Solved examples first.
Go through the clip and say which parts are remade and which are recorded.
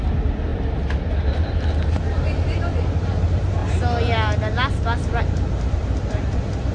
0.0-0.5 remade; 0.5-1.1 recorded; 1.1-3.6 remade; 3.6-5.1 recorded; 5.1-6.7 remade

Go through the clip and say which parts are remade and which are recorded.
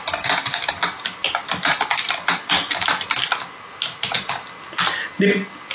0.0-5.7 recorded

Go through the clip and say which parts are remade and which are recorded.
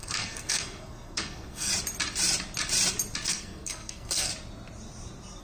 0.0-1.7 remade; 1.7-3.3 recorded; 3.3-4.3 remade; 4.3-5.4 recorded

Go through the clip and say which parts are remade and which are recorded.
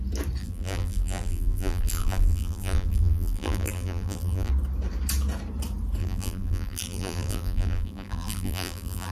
0.0-0.4 recorded; 0.4-4.5 remade; 4.5-6.0 recorded; 6.0-9.1 remade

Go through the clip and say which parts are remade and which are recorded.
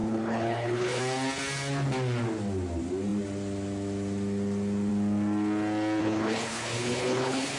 0.0-1.0 remade; 1.0-6.0 recorded; 6.0-7.6 remade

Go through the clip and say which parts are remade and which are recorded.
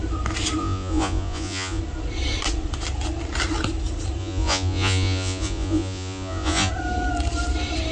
0.0-0.6 recorded; 0.6-1.8 remade; 1.8-4.2 recorded; 4.2-6.7 remade; 6.7-7.9 recorded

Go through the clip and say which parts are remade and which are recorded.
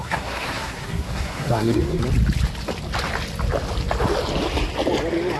0.0-2.0 remade; 2.0-5.4 recorded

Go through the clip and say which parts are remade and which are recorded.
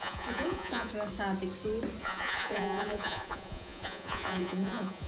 0.0-0.9 remade; 0.9-2.0 recorded; 2.0-5.1 remade